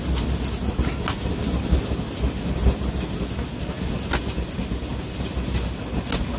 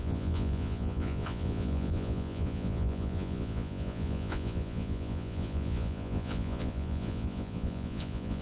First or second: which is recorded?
first